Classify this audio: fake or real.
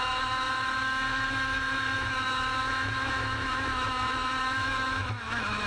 fake